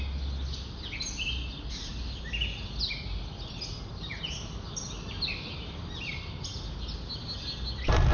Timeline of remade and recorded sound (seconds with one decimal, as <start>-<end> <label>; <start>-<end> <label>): 0.0-8.1 recorded